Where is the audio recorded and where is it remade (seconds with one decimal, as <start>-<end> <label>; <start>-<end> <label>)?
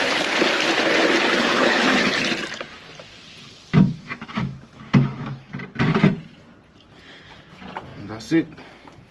0.0-1.5 recorded; 1.5-2.1 remade; 2.1-3.7 recorded; 3.7-5.6 remade; 5.6-9.1 recorded